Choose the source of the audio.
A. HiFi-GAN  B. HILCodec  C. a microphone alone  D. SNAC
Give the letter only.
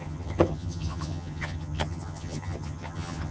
A